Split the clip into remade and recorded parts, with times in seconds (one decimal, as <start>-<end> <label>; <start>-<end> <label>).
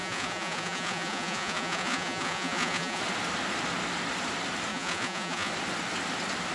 0.0-3.0 remade; 3.0-4.7 recorded; 4.7-5.5 remade; 5.5-6.5 recorded